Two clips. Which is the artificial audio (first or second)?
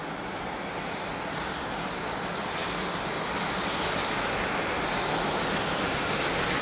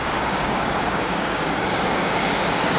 second